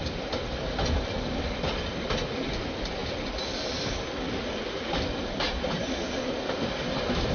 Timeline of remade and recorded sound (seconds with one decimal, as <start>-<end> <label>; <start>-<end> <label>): 0.0-7.3 recorded